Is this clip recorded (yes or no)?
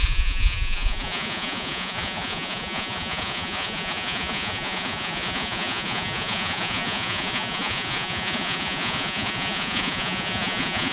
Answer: no